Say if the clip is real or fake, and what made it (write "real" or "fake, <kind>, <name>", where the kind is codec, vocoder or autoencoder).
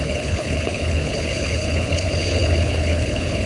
fake, codec, HILCodec